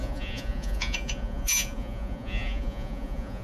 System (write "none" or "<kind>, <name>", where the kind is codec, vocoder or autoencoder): vocoder, Vocos